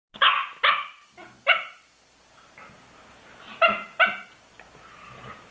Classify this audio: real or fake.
real